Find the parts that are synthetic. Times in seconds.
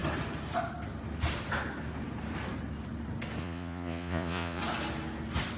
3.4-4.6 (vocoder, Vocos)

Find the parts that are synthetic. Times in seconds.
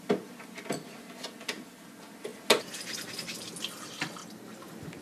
4.2-5.0 (vocoder, BigVGAN v2)